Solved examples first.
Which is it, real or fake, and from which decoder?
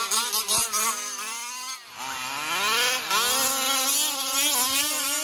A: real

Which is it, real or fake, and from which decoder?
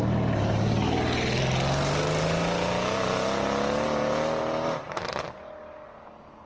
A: real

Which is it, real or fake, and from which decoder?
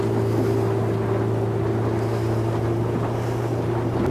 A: real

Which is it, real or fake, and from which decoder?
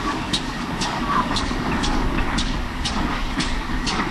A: fake, codec, DAC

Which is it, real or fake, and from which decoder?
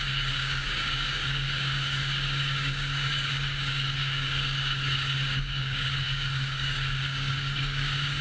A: fake, codec, DAC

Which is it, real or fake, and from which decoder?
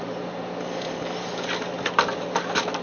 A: real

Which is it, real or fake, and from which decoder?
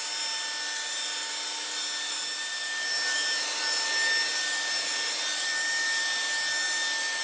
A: real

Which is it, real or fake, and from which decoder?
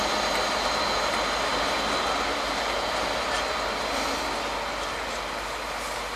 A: real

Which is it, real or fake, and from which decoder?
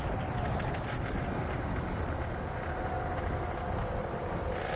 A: real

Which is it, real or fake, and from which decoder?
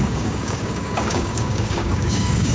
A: fake, codec, DAC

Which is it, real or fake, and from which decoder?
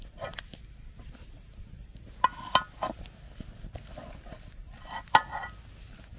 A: real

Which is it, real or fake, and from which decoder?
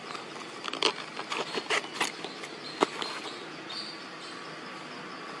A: real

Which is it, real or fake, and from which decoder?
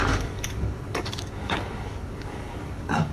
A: fake, codec, DAC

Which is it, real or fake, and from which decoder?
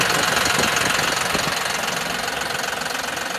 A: real